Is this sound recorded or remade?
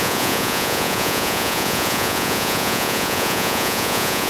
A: remade